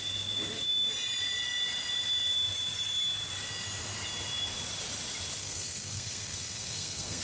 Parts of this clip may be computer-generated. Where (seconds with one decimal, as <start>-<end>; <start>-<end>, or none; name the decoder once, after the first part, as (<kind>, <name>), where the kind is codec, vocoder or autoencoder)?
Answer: 5.4-7.2 (codec, SNAC)